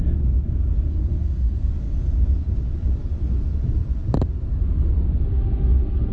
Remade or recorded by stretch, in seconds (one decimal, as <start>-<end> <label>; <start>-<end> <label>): 0.0-0.9 recorded; 0.9-1.7 remade; 1.7-6.1 recorded